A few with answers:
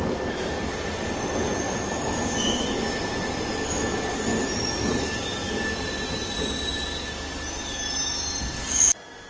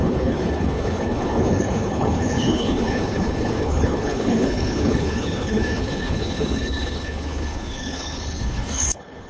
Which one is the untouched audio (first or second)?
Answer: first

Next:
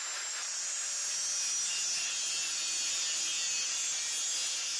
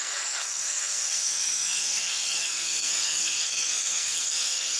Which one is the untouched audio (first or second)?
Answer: first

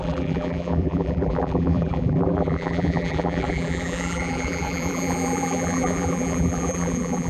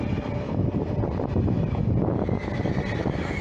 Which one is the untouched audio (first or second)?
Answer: second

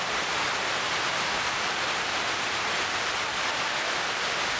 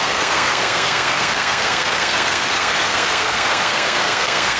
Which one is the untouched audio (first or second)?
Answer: first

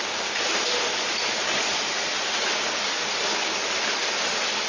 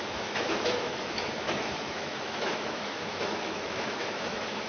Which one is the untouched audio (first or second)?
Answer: first